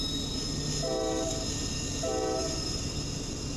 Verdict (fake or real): real